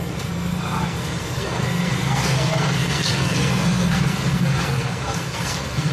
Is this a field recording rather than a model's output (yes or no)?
no